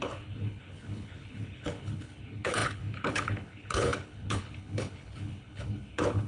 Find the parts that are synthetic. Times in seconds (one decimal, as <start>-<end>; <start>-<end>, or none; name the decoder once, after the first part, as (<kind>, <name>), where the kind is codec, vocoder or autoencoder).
0.0-6.3 (codec, HILCodec)